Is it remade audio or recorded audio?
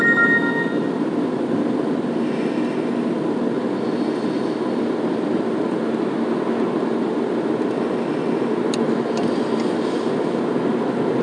recorded